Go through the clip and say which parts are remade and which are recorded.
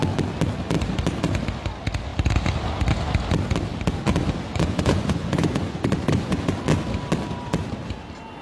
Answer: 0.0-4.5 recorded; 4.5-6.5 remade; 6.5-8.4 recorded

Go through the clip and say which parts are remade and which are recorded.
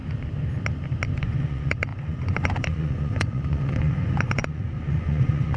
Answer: 0.0-1.2 recorded; 1.2-5.6 remade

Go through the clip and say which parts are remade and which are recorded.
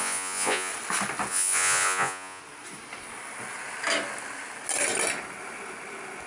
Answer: 0.0-0.7 remade; 0.7-1.3 recorded; 1.3-2.4 remade; 2.4-6.3 recorded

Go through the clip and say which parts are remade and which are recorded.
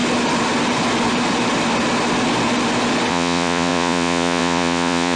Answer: 0.0-3.1 recorded; 3.1-5.2 remade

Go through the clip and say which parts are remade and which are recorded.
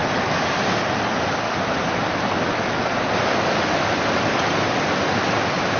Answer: 0.0-5.8 recorded